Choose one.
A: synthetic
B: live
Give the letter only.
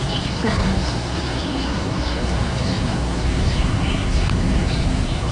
A